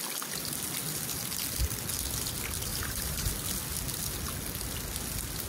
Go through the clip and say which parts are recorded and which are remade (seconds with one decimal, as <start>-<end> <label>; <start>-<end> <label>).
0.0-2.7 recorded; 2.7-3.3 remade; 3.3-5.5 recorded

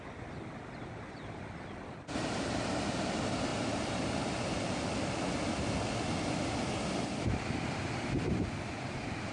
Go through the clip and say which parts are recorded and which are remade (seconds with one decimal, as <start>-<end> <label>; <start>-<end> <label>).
0.0-9.3 recorded

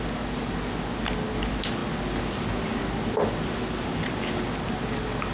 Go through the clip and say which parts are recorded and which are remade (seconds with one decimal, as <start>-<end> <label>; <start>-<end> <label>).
0.0-5.3 recorded